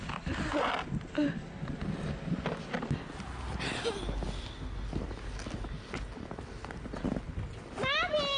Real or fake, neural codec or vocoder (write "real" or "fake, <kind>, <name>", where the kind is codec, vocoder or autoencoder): real